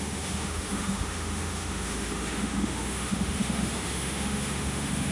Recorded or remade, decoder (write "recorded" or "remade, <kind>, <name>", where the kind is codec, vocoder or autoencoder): remade, autoencoder, DAC-VAE